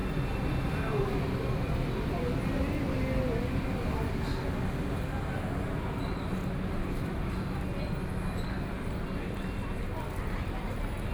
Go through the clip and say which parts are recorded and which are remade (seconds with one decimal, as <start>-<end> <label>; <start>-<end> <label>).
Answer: 0.0-11.1 recorded